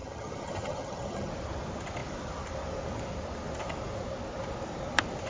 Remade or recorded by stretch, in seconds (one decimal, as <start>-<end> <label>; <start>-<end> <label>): 0.0-1.3 remade; 1.3-5.3 recorded